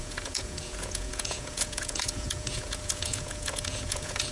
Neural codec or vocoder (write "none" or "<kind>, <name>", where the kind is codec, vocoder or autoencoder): vocoder, Vocos